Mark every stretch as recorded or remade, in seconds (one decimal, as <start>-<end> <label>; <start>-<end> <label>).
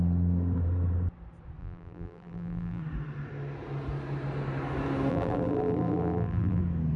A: 0.0-1.6 recorded; 1.6-2.8 remade; 2.8-5.1 recorded; 5.1-6.6 remade; 6.6-7.0 recorded